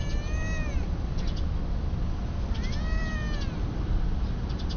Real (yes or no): yes